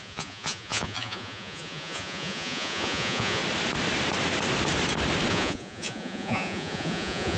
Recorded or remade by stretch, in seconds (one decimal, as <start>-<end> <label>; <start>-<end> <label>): 0.0-3.4 remade; 3.4-5.3 recorded; 5.3-7.4 remade